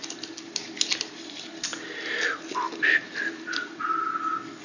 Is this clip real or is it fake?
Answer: real